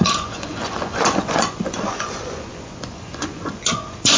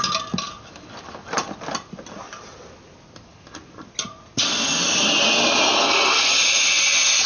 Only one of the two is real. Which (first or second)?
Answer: second